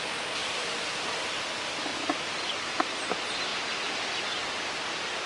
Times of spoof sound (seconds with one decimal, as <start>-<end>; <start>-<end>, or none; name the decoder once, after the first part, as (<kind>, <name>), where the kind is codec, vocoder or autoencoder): 1.9-2.8 (vocoder, BigVGAN v2)